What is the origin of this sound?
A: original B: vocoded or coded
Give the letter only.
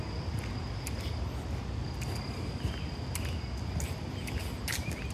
A